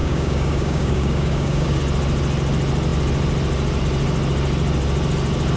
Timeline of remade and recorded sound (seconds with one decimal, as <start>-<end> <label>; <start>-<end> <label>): 0.0-1.8 remade; 1.8-5.6 recorded